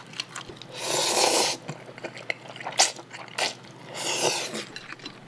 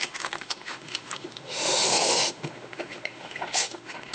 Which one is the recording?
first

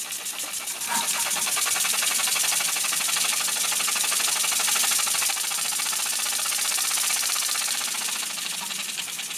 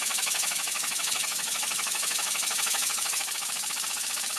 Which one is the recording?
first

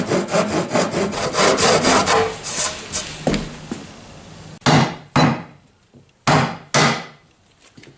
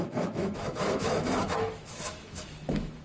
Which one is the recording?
first